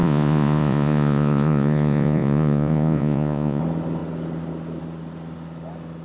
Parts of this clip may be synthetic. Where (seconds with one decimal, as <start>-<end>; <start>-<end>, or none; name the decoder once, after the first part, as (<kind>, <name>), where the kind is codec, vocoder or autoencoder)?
0.0-3.6 (vocoder, Vocos)